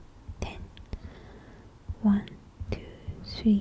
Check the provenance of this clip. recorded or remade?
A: recorded